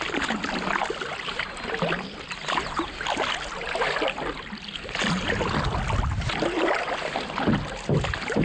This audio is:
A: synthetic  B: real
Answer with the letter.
B